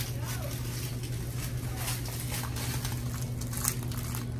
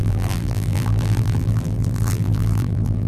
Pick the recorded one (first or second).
first